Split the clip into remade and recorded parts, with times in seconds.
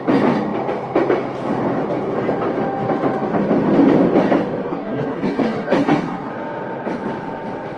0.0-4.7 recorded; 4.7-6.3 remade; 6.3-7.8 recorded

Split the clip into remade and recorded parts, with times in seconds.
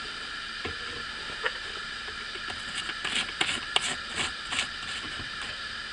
0.0-5.9 recorded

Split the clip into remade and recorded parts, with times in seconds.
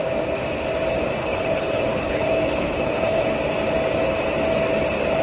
0.0-1.2 recorded; 1.2-3.2 remade; 3.2-5.2 recorded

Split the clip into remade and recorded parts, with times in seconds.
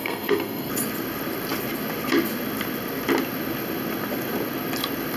0.0-0.7 remade; 0.7-5.2 recorded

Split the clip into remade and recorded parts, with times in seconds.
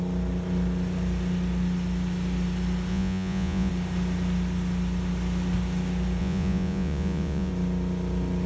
0.0-2.9 recorded; 2.9-3.7 remade; 3.7-6.2 recorded; 6.2-7.5 remade; 7.5-8.5 recorded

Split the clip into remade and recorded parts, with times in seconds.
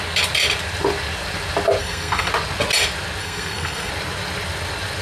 0.0-1.8 recorded; 1.8-2.3 remade; 2.3-3.2 recorded; 3.2-3.9 remade; 3.9-5.0 recorded